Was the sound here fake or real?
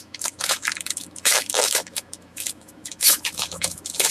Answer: fake